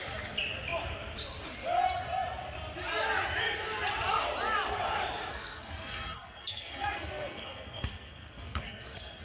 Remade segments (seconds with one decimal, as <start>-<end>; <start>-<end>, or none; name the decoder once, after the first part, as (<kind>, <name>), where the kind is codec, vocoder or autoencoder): 5.3-9.2 (codec, SNAC)